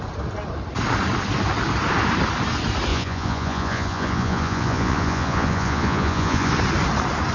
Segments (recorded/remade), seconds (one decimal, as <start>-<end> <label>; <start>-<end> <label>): 0.0-2.9 recorded; 2.9-6.5 remade; 6.5-7.3 recorded